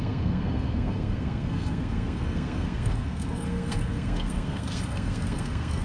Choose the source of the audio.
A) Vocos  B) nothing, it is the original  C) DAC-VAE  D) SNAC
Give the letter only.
D